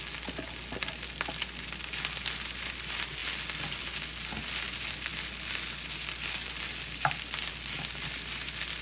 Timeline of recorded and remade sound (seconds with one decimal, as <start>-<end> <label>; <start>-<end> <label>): 0.0-8.8 recorded